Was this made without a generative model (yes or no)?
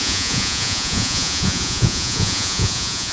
no